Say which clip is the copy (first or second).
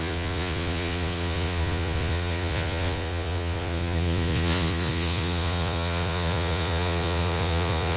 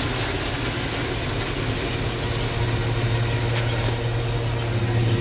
first